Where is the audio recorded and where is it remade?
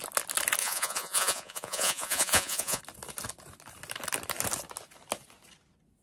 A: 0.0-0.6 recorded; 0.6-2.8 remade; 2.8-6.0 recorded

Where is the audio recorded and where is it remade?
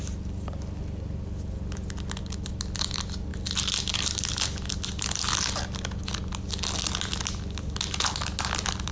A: 0.0-8.9 recorded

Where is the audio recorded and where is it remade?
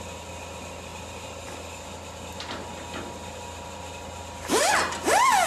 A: 0.0-5.5 recorded